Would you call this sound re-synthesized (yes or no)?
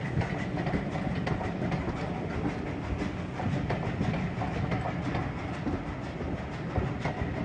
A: no